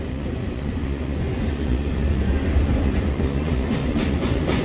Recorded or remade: remade